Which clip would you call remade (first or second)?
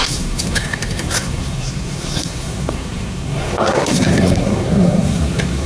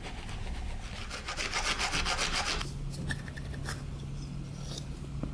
first